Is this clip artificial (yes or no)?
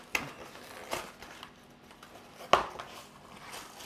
no